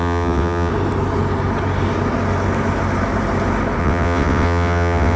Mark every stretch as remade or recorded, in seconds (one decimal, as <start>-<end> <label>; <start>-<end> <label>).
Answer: 0.0-0.7 remade; 0.7-3.8 recorded; 3.8-5.2 remade